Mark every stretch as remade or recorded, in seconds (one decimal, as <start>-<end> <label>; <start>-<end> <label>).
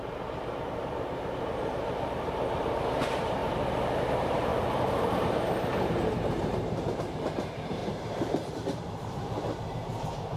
0.0-3.4 remade; 3.4-4.1 recorded; 4.1-4.5 remade; 4.5-5.1 recorded; 5.1-10.4 remade